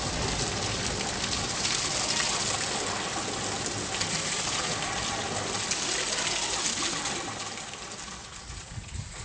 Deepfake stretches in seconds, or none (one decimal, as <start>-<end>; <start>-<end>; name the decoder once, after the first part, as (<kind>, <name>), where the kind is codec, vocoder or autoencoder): 8.2-9.2 (vocoder, Vocos)